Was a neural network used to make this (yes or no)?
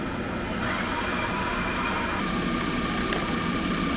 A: no